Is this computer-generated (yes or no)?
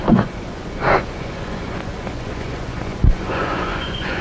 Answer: yes